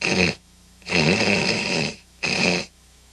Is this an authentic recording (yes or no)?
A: no